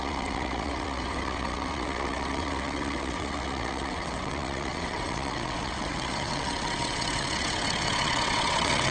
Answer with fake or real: fake